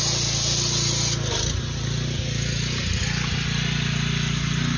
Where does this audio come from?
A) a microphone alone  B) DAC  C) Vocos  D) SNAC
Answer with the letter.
A